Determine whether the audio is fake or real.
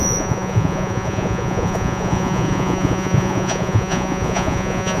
fake